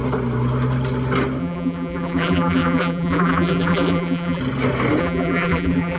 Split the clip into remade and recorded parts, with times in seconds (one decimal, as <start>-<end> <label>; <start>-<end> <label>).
0.0-1.4 recorded; 1.4-4.4 remade; 4.4-5.0 recorded; 5.0-6.0 remade